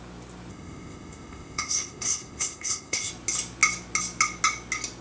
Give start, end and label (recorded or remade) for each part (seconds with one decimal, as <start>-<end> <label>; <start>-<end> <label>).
0.0-0.5 recorded; 0.5-3.1 remade; 3.1-5.0 recorded